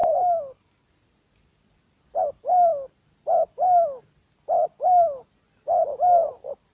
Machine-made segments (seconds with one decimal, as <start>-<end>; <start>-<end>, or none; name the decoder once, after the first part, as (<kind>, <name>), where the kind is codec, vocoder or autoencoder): none